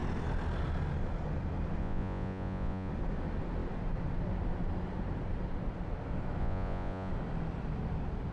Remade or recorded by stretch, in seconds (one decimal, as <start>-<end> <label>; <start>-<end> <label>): 0.0-1.8 recorded; 1.8-2.9 remade; 2.9-6.4 recorded; 6.4-7.1 remade; 7.1-8.3 recorded